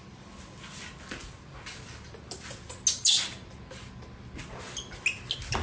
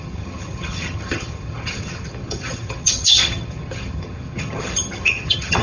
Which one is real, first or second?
first